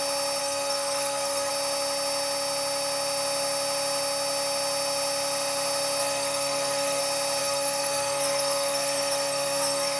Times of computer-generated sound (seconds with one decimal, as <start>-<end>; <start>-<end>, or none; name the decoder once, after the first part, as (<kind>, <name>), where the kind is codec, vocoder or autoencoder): 0.4-1.5 (codec, SNAC); 6.0-7.0; 7.4-10.0